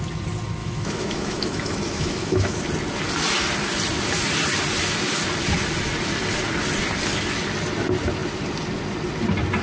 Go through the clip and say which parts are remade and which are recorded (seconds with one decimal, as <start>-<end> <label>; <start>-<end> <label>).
0.0-0.6 recorded; 0.6-2.6 remade; 2.6-9.6 recorded